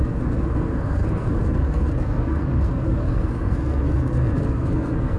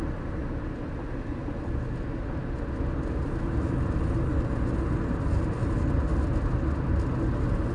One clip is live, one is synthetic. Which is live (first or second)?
second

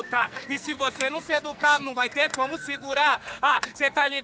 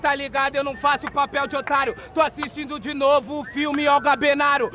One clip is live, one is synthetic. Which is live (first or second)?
second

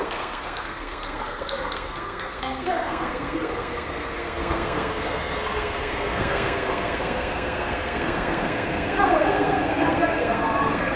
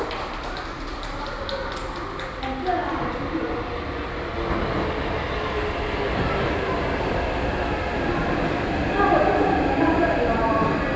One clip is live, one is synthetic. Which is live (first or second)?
second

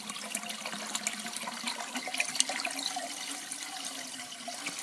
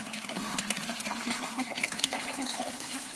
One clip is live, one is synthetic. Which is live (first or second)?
first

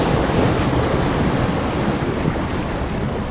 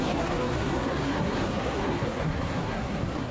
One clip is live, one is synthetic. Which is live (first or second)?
first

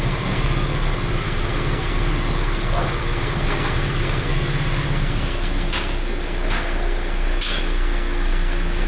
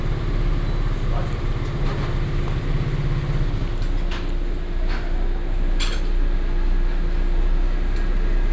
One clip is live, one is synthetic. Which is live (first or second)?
second